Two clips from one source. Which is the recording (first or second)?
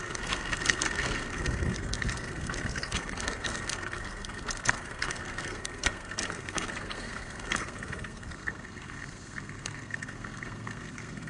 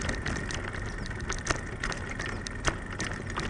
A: second